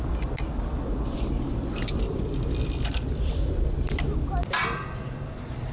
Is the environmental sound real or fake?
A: real